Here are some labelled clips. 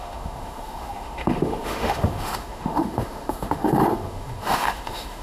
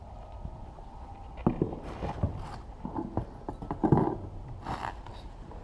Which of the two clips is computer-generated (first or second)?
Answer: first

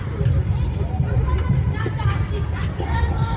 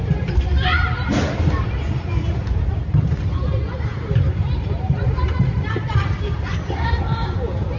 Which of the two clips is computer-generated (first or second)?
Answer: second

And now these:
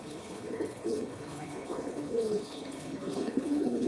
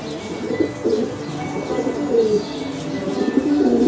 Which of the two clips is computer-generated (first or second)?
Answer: first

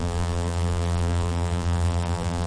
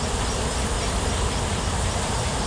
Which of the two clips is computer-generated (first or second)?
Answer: first